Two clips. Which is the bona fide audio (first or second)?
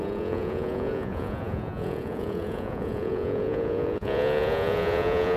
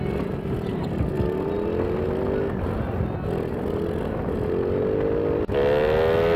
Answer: second